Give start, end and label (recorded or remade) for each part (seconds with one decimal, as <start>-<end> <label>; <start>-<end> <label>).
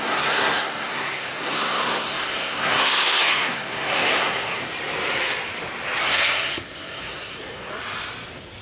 0.0-4.6 remade; 4.6-6.0 recorded; 6.0-7.7 remade; 7.7-8.6 recorded